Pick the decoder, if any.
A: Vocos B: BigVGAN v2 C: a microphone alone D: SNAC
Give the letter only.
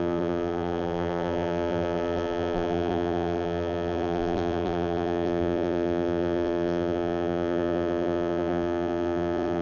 B